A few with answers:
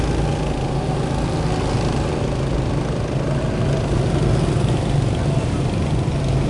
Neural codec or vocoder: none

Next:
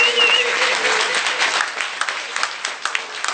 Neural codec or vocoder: none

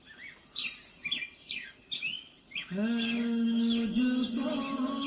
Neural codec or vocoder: none